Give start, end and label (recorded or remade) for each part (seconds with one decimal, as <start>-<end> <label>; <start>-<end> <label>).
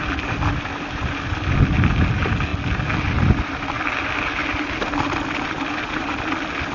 0.0-6.7 recorded